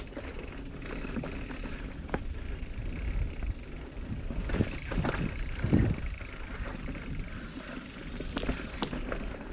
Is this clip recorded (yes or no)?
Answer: no